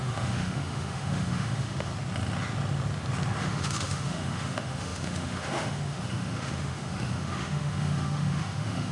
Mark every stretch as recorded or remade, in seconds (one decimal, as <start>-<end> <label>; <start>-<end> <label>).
0.0-1.9 remade; 1.9-3.4 recorded; 3.4-8.9 remade